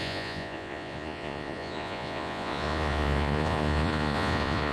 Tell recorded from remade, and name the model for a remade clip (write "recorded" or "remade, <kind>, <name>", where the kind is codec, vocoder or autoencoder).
remade, vocoder, Vocos